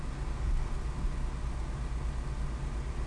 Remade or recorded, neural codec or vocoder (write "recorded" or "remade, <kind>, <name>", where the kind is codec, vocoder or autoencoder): recorded